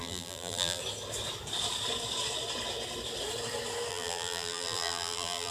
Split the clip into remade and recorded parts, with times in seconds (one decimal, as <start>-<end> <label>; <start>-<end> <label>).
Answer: 0.0-0.8 remade; 0.8-3.9 recorded; 3.9-5.5 remade